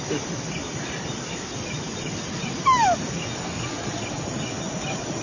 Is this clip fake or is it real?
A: real